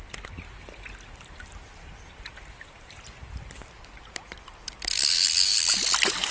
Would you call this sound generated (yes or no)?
no